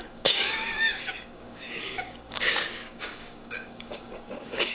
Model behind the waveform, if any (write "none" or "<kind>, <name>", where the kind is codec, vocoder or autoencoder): codec, DAC